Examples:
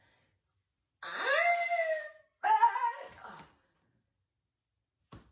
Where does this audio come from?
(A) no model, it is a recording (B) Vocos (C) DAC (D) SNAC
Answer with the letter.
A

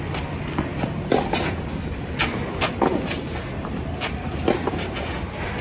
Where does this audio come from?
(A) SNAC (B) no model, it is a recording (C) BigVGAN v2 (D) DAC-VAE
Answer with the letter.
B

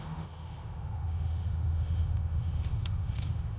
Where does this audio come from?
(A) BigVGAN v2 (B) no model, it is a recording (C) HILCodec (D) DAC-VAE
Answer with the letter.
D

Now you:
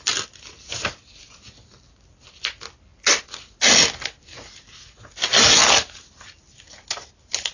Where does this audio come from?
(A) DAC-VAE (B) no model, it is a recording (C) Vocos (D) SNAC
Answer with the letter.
B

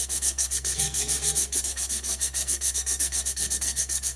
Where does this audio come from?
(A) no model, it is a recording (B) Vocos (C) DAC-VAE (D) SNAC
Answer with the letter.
D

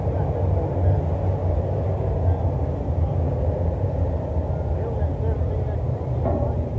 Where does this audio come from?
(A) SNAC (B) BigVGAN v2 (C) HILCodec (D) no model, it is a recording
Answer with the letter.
D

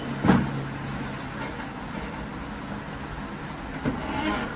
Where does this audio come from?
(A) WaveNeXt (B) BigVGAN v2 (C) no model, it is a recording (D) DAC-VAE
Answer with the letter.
C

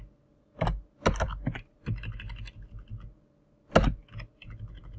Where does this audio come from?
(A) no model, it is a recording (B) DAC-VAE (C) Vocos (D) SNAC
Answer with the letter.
A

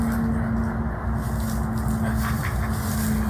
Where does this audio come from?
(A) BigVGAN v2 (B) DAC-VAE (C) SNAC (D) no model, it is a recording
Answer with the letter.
D